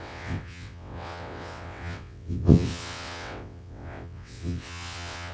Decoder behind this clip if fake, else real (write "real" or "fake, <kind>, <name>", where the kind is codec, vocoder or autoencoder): fake, vocoder, WaveNeXt